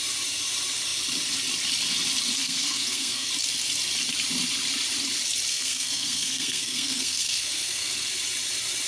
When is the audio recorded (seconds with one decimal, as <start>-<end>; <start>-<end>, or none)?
0.0-2.4; 3.3-5.5; 8.1-8.9